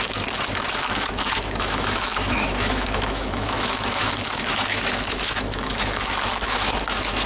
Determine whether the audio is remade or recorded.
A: remade